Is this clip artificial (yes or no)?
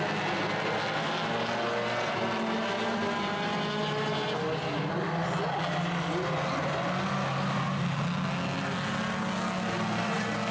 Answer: no